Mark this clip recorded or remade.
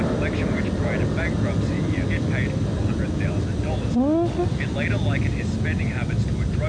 recorded